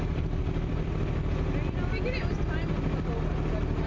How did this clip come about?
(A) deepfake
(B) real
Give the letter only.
B